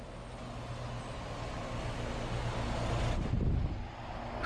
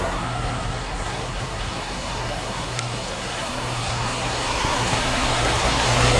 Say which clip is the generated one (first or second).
second